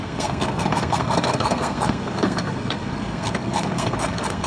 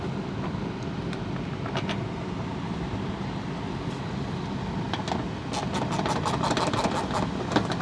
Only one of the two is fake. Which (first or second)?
first